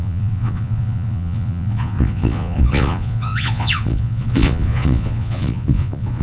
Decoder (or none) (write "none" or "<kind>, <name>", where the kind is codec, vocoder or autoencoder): vocoder, Vocos